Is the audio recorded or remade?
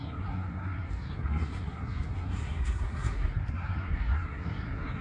remade